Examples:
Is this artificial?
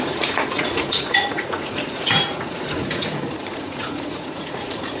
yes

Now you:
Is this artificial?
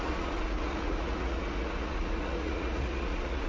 yes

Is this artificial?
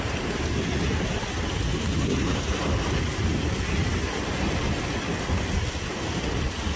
no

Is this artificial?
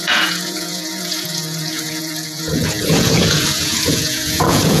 yes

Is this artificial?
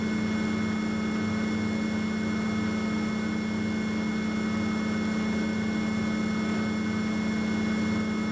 no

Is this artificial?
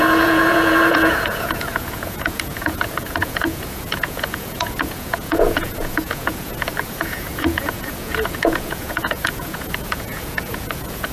yes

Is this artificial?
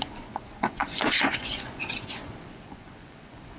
yes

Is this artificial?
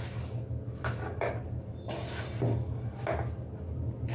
no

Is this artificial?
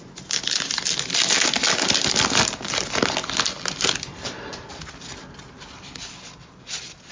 no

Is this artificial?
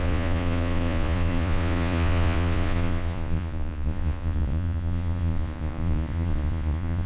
yes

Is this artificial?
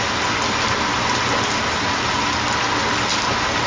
no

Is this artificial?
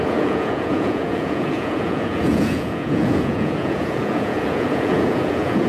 yes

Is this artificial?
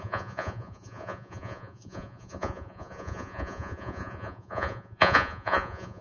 yes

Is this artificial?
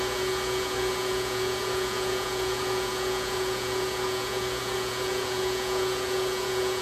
yes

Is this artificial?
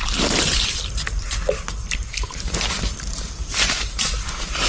no